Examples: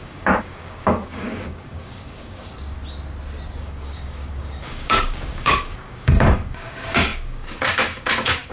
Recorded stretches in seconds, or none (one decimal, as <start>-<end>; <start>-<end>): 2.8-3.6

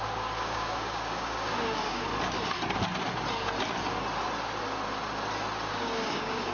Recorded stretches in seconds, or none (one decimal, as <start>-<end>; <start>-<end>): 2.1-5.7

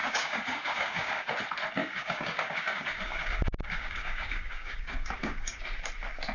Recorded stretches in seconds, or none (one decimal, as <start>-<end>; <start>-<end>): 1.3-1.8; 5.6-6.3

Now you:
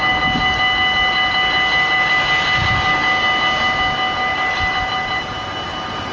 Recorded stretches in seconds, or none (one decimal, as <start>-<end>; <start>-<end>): 0.0-6.1

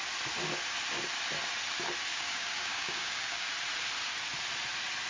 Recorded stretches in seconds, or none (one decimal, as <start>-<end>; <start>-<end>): 0.0-2.1; 3.5-5.1